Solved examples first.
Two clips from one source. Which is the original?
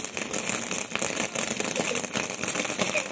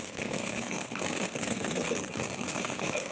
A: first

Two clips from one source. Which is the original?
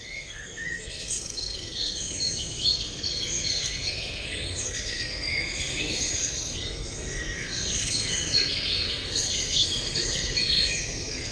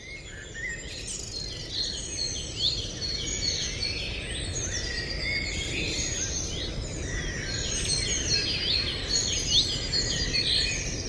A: second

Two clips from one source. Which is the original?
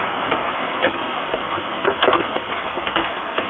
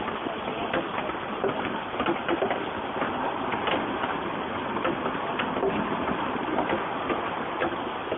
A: second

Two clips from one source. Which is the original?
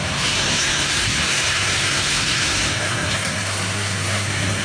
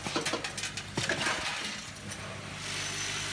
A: second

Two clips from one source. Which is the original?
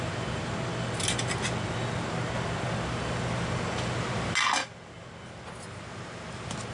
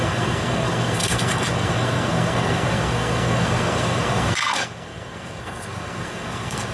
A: first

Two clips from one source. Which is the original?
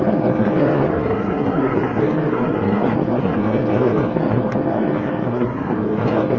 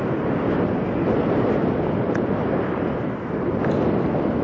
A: second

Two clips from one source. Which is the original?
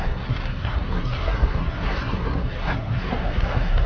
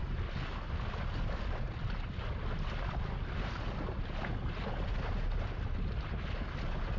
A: second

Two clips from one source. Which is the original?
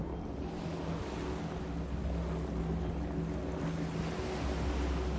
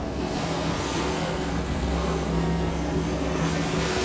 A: first